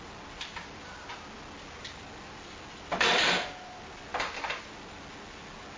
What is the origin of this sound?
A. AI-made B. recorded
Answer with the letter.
B